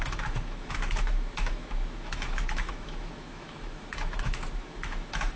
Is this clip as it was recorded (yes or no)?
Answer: no